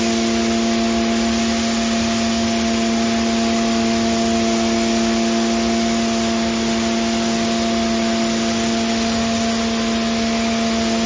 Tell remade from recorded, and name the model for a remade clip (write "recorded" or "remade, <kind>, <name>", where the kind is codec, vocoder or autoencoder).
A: recorded